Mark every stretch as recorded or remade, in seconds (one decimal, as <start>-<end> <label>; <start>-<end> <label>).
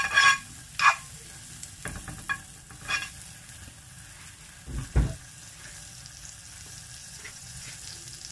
0.0-7.0 recorded; 7.0-7.7 remade; 7.7-8.3 recorded